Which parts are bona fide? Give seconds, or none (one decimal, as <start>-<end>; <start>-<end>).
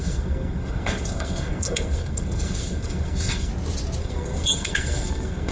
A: 3.5-4.0